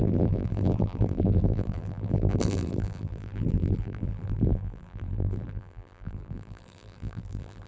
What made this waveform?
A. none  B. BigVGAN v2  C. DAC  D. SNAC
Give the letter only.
B